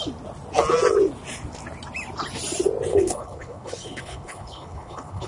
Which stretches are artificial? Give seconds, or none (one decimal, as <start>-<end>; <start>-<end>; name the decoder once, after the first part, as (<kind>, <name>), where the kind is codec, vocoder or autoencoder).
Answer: 2.9-5.3 (codec, HILCodec)